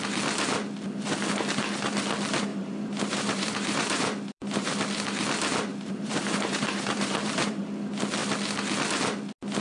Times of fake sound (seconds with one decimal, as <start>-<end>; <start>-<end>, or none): 2.5-4.7; 5.7-7.6